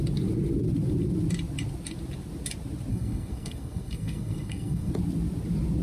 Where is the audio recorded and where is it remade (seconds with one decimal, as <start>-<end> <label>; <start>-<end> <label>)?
0.0-2.9 recorded; 2.9-4.9 remade; 4.9-5.8 recorded